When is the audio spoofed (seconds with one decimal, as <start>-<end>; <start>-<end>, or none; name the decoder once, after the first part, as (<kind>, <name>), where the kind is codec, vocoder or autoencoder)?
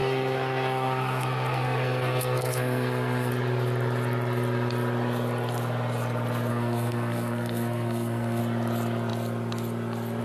0.0-3.3 (codec, SNAC); 6.5-8.4